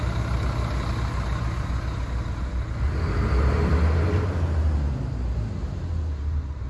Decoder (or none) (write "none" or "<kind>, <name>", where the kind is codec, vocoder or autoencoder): none